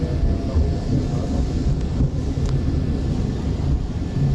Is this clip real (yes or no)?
yes